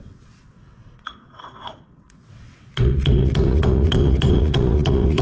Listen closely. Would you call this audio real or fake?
fake